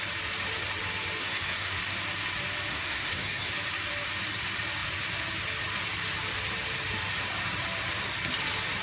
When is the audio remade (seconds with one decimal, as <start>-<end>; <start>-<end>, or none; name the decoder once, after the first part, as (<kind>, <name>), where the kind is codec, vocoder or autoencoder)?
1.2-1.7 (codec, SNAC); 2.7-3.5